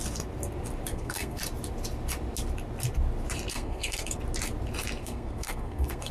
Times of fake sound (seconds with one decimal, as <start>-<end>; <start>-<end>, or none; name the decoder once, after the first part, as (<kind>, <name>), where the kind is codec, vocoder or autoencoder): 0.9-1.4 (codec, SNAC); 3.5-4.2; 5.0-6.1